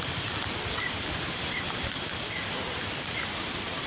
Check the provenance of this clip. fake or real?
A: fake